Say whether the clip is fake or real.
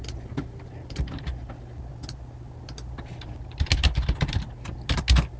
real